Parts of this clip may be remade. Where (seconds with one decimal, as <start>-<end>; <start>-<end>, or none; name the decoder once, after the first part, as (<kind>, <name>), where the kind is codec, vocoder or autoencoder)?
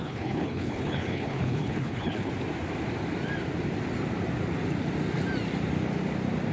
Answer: 0.0-2.3 (codec, HILCodec)